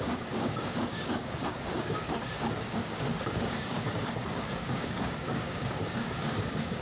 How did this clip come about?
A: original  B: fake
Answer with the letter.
B